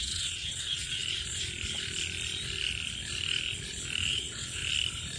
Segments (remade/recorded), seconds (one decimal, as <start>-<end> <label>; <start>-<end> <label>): 0.0-1.0 remade; 1.0-4.1 recorded; 4.1-4.6 remade; 4.6-5.2 recorded